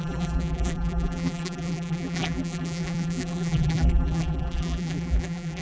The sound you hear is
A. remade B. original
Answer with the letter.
A